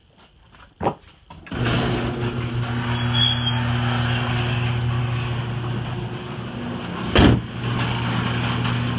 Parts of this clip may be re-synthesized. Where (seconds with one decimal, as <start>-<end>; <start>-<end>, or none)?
none